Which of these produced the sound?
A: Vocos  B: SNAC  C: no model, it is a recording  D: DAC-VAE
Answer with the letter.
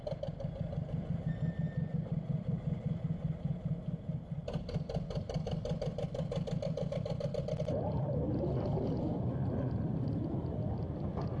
C